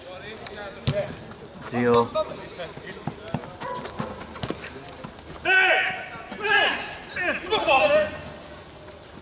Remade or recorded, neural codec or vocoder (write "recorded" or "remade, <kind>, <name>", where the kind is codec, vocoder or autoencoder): recorded